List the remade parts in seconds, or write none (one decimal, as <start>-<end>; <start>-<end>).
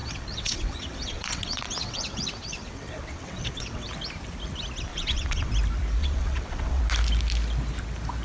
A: 0.0-3.9; 4.9-5.5; 6.0-6.8